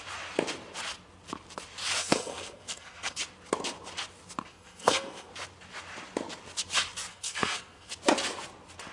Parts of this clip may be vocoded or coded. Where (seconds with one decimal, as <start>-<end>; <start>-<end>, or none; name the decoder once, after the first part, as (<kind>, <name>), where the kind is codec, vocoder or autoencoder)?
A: 2.0-3.2 (codec, SNAC); 4.5-5.3; 7.1-7.9

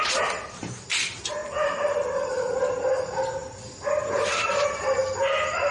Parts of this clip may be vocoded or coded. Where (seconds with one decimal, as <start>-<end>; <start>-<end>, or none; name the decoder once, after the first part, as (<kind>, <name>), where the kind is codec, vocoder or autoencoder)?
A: none